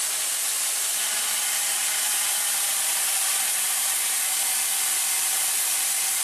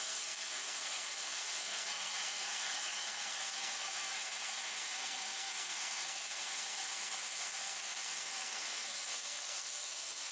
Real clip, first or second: first